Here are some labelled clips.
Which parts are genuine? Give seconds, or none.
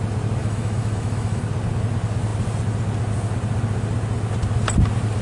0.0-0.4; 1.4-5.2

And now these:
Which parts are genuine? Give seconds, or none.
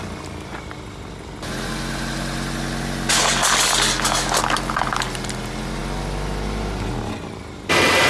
0.0-8.1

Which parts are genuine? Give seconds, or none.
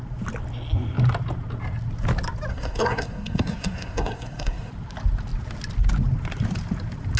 0.0-2.5; 4.7-7.2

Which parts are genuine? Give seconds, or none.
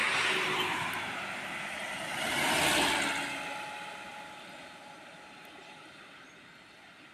0.0-4.1; 6.2-7.1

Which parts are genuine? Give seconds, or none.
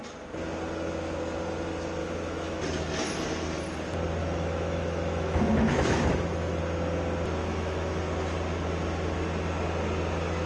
0.0-2.0; 2.6-4.2; 6.6-7.4; 8.0-10.5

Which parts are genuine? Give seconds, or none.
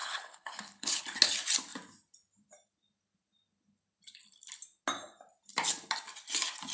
1.0-6.7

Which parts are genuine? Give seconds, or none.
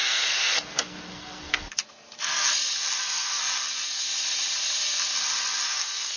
1.8-3.0; 3.4-5.7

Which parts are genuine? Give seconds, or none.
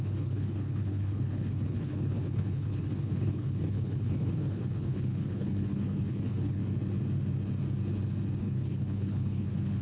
6.6-8.4